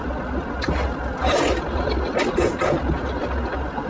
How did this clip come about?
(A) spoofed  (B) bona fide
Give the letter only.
B